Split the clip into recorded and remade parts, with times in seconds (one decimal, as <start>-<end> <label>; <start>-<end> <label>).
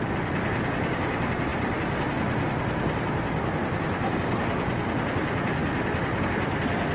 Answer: 0.0-1.5 recorded; 1.5-2.2 remade; 2.2-5.6 recorded; 5.6-6.2 remade; 6.2-6.9 recorded